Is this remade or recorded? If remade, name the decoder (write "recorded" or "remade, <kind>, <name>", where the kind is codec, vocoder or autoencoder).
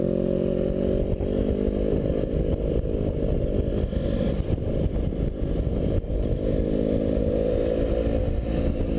recorded